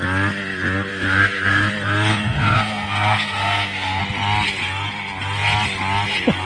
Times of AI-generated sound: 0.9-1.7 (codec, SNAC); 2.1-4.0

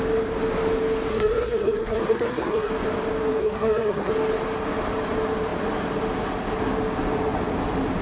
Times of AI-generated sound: 1.1-2.7 (codec, SNAC); 3.4-4.1

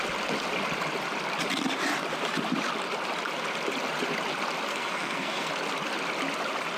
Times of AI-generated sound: 4.7-5.5 (codec, SNAC)

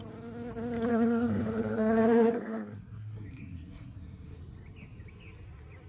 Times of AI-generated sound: 0.9-4.4 (codec, SNAC)

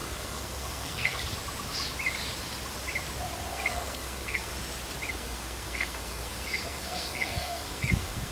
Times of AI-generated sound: 0.0-1.2 (codec, SNAC); 3.5-4.5; 5.1-8.3

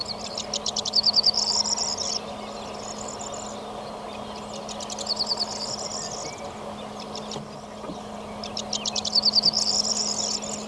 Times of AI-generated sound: none